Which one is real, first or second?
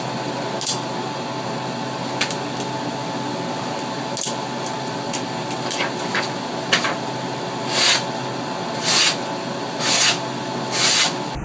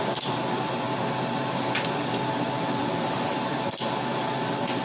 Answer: first